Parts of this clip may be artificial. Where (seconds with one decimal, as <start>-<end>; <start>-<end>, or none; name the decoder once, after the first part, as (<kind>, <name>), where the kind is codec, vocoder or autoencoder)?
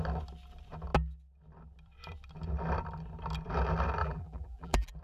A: 4.0-5.0 (vocoder, BigVGAN v2)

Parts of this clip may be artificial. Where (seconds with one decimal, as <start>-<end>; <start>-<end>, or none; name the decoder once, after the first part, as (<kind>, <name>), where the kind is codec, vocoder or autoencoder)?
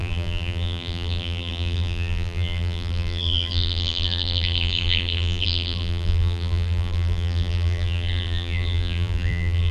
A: 0.0-9.7 (vocoder, BigVGAN v2)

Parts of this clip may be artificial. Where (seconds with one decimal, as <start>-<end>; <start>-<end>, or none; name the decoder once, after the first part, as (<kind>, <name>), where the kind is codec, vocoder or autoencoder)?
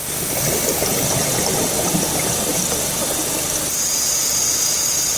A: 1.3-1.9 (vocoder, BigVGAN v2); 2.5-5.2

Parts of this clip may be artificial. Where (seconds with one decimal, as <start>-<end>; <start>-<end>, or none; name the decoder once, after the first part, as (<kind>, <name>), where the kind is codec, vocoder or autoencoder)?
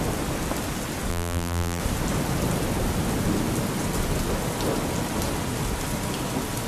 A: 1.1-1.8 (vocoder, BigVGAN v2)